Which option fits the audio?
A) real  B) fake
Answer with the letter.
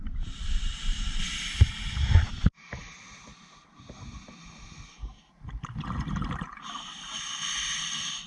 A